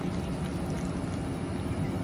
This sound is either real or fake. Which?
real